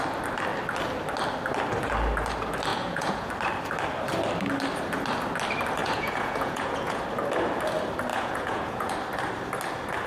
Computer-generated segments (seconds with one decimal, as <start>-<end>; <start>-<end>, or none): 2.7-3.3; 5.8-7.0; 8.1-8.9